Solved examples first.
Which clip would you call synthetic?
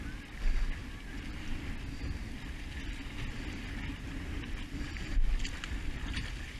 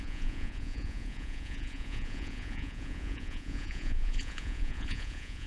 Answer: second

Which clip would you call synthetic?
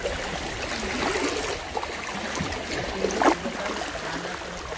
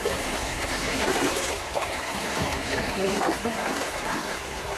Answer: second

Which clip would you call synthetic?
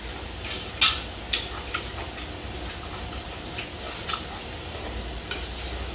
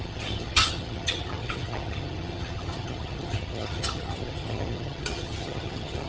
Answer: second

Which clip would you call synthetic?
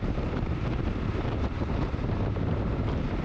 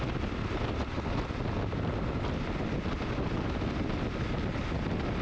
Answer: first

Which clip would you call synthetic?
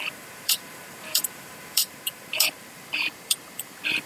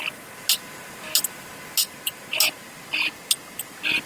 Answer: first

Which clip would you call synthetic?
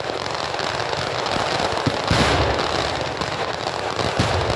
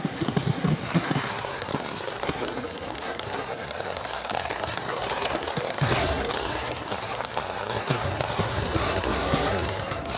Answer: second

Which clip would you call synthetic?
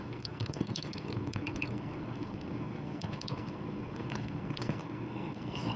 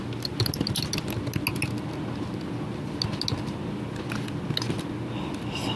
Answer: first